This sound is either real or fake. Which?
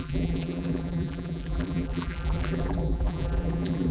fake